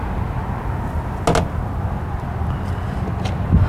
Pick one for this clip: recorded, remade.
recorded